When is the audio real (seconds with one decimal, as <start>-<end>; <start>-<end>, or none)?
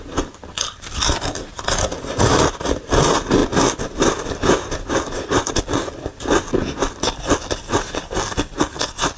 0.0-9.2